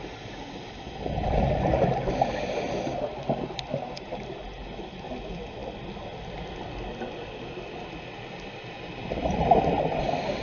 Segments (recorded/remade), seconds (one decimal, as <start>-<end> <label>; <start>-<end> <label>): 0.0-10.4 recorded